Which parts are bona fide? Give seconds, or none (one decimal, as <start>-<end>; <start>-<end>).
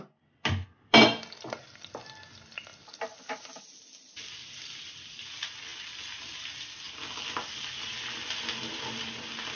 0.0-9.6